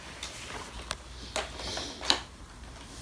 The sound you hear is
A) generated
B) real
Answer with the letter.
B